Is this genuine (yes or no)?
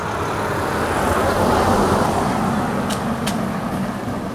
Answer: yes